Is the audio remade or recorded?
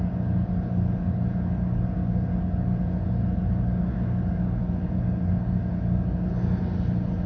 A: recorded